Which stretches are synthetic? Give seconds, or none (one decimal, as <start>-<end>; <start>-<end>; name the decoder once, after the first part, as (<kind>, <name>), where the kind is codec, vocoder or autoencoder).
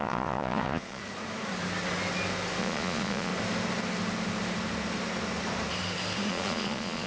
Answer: 0.0-1.0 (vocoder, Vocos); 2.6-3.3; 6.3-7.1